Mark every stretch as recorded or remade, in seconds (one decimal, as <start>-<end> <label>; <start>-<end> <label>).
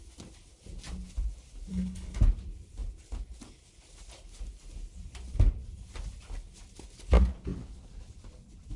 0.0-1.7 recorded; 1.7-2.2 remade; 2.2-8.8 recorded